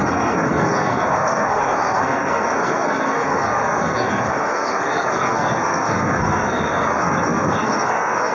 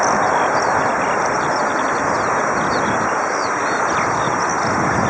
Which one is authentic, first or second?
second